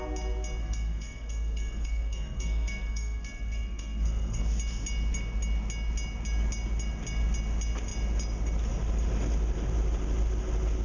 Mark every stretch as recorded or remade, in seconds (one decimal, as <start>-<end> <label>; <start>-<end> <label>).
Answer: 0.0-0.6 recorded; 0.6-4.4 remade; 4.4-10.8 recorded